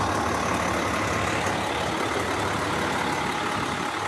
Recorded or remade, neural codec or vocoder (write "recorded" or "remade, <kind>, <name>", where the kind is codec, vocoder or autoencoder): recorded